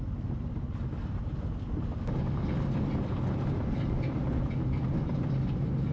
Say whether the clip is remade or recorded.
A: recorded